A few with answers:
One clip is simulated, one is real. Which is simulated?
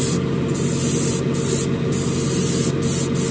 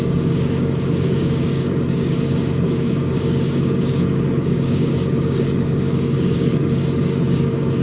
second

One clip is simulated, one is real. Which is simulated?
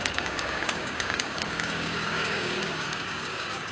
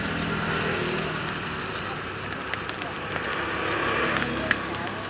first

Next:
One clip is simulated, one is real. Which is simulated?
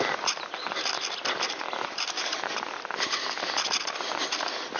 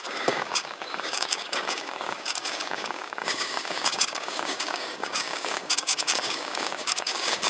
second